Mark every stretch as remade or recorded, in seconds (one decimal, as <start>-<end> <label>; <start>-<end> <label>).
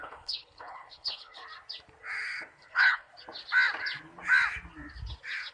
0.0-1.4 remade; 1.4-2.6 recorded; 2.6-3.1 remade; 3.1-5.5 recorded